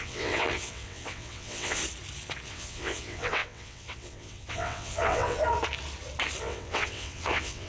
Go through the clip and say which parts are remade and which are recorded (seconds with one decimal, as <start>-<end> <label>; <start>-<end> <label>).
0.0-1.8 remade; 1.8-2.5 recorded; 2.5-5.4 remade; 5.4-6.4 recorded; 6.4-7.7 remade